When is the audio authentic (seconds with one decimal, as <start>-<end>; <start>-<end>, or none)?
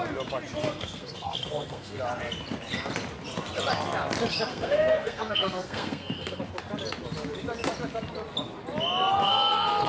0.0-0.6; 2.0-4.5; 6.4-9.2